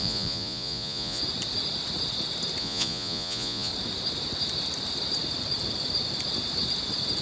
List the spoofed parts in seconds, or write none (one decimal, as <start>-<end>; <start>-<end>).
0.0-1.2; 2.6-3.7